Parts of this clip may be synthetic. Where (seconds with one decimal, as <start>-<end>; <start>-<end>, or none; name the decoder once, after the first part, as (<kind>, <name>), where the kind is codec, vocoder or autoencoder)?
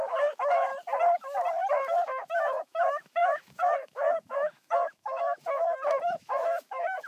0.0-0.7 (autoencoder, DAC-VAE); 1.7-7.1